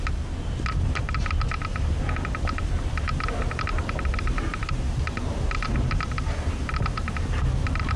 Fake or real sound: real